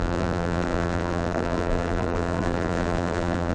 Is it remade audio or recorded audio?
remade